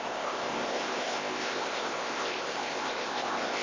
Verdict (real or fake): fake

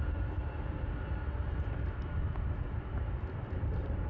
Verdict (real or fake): real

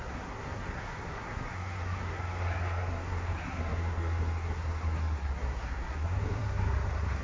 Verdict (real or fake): fake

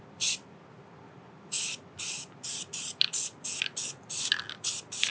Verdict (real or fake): real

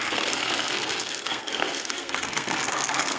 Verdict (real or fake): fake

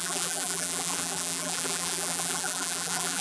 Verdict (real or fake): fake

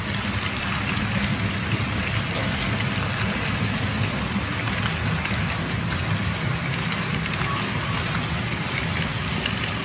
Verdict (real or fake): real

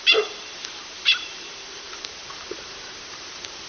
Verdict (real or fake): fake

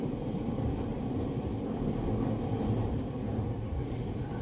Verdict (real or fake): fake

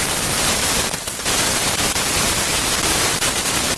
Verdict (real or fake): fake